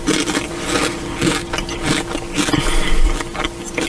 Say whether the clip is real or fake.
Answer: real